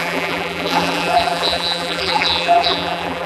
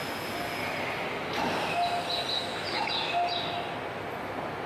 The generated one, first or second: first